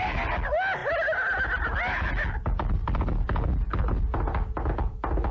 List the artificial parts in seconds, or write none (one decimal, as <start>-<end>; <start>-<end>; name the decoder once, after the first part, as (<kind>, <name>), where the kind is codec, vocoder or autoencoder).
none